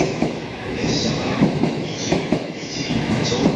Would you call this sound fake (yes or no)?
yes